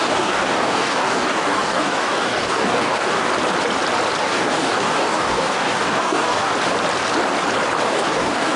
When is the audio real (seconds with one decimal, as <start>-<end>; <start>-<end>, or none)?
3.3-4.2; 6.5-7.8